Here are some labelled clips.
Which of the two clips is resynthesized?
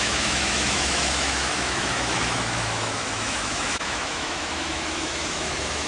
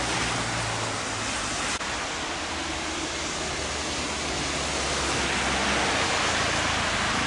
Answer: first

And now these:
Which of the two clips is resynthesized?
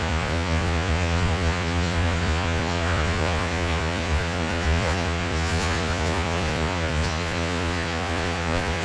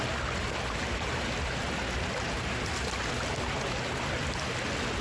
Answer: first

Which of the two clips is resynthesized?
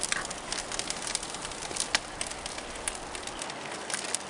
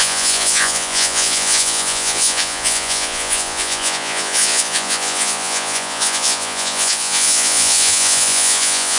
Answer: second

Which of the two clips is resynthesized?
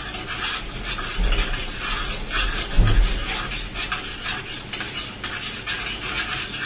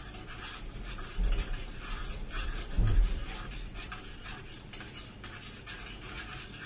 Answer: second